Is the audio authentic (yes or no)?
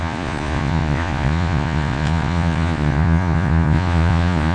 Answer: no